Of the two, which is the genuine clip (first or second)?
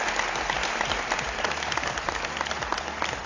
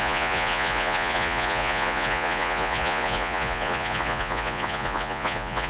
first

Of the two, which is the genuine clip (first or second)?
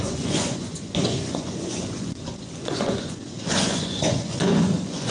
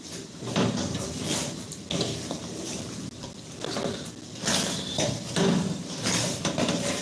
second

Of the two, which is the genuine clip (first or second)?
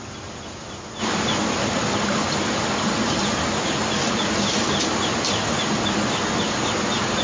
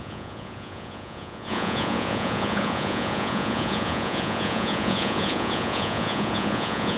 first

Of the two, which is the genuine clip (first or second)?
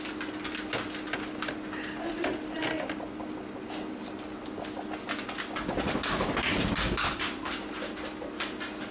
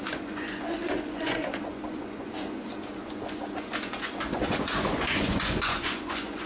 first